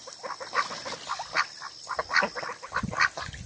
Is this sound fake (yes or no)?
no